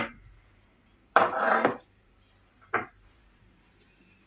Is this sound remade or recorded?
remade